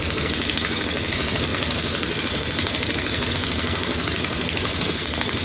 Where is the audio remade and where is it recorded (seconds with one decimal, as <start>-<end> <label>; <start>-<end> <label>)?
0.0-5.4 remade